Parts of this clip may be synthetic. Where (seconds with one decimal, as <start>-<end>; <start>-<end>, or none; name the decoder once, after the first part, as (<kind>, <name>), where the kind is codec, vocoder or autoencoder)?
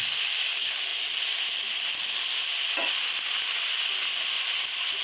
none